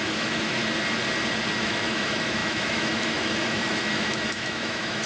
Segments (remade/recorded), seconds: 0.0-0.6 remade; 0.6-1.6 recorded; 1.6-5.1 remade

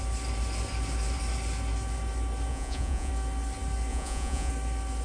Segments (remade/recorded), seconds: 0.0-2.5 recorded; 2.5-3.1 remade; 3.1-3.9 recorded; 3.9-4.5 remade; 4.5-5.0 recorded

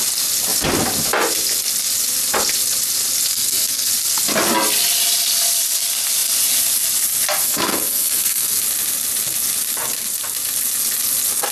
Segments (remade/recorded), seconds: 0.0-3.3 recorded; 3.3-3.9 remade; 3.9-7.4 recorded; 7.4-8.6 remade; 8.6-11.5 recorded

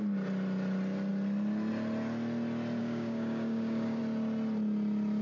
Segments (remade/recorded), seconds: 0.0-2.8 recorded; 2.8-4.0 remade; 4.0-5.2 recorded

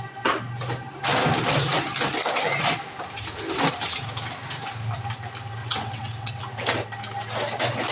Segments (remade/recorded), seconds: 0.0-5.6 recorded; 5.6-6.4 remade; 6.4-7.9 recorded